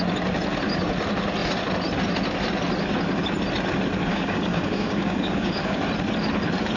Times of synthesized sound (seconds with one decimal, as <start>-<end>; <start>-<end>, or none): 4.1-5.8